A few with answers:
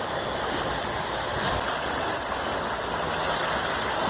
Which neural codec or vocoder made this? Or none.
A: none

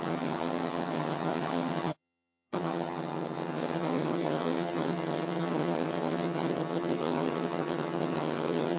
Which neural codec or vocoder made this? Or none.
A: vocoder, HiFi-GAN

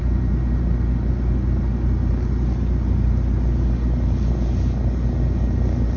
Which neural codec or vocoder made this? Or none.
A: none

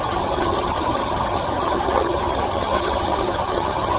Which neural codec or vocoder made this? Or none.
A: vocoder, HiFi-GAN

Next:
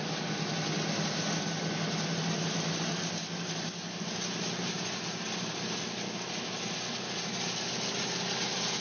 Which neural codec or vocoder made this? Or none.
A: none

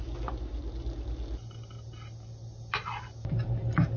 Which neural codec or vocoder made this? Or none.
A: none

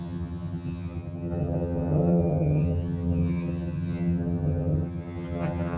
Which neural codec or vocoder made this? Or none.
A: vocoder, HiFi-GAN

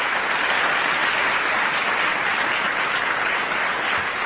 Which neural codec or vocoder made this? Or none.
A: none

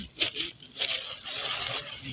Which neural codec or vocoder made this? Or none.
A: none